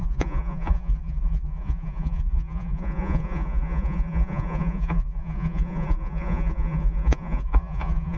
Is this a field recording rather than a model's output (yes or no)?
no